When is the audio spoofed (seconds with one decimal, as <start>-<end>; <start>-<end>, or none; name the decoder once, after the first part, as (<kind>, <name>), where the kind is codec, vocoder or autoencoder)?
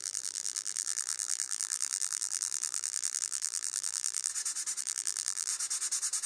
0.0-4.3 (vocoder, BigVGAN v2); 4.8-5.5